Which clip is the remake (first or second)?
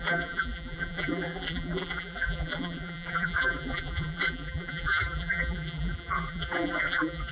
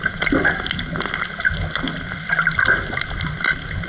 first